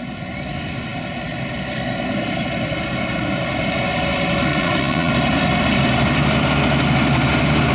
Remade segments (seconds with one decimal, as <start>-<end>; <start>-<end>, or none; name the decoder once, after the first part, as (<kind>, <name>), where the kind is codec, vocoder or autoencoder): 4.5-5.1 (vocoder, Vocos)